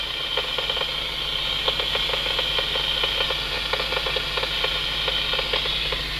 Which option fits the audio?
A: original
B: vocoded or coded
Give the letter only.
A